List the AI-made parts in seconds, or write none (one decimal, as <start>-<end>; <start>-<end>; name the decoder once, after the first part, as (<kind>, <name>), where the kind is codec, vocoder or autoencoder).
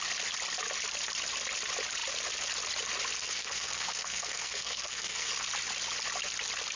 3.2-5.3 (codec, SNAC)